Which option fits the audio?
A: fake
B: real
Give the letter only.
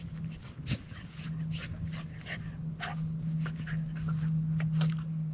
B